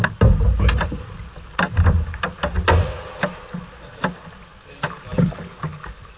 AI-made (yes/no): no